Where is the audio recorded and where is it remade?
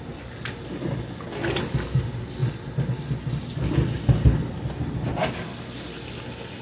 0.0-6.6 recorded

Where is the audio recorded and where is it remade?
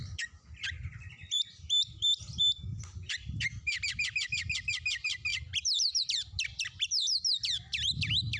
0.0-8.4 remade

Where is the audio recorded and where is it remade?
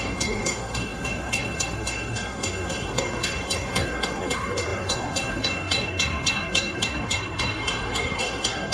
0.0-8.7 remade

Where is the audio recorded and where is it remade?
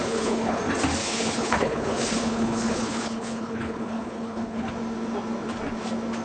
0.0-0.6 remade; 0.6-1.0 recorded; 1.0-4.7 remade; 4.7-6.2 recorded